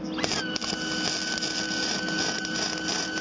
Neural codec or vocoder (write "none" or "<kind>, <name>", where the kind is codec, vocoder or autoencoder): none